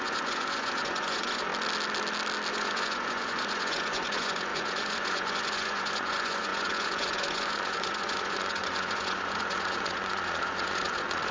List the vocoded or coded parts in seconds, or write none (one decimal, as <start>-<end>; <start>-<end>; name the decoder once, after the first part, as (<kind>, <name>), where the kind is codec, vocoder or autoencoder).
0.0-1.5 (vocoder, Vocos); 2.5-11.3